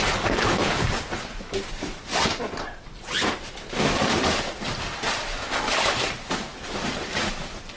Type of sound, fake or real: real